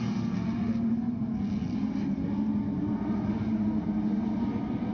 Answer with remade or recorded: recorded